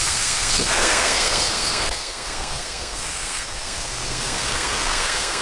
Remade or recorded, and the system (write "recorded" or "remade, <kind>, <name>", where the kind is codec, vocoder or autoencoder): remade, codec, SNAC